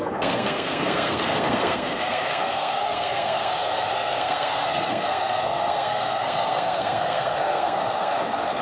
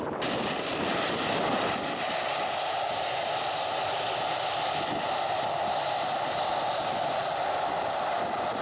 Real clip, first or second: second